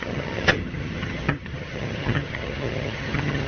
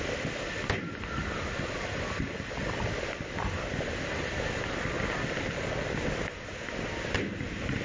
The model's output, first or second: first